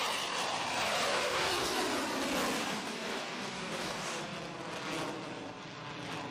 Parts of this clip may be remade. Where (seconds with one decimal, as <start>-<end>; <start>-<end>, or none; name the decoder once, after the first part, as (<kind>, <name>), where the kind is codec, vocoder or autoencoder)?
1.1-1.8 (codec, DAC); 2.6-4.2